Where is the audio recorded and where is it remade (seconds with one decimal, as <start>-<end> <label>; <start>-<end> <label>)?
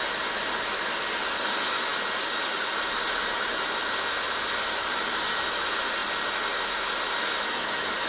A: 0.0-8.1 recorded